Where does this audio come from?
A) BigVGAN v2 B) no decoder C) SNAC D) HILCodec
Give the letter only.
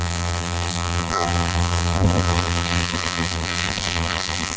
A